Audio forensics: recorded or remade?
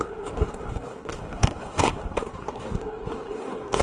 remade